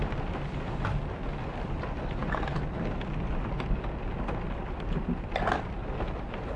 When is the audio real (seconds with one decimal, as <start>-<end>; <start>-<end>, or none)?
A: 0.0-6.6